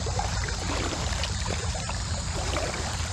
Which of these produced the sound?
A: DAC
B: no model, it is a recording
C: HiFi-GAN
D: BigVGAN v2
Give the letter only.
D